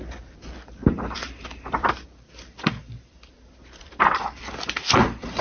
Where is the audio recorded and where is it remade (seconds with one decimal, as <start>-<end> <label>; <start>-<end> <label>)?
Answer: 0.0-5.4 remade